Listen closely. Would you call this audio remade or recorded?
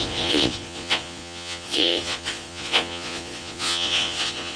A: remade